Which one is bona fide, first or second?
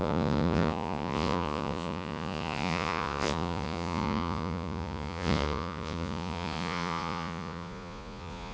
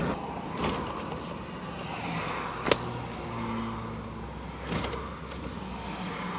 second